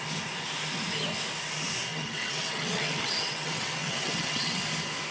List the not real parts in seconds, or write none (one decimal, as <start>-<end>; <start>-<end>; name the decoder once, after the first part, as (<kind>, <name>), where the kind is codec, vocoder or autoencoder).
1.9-4.6 (vocoder, WaveNeXt)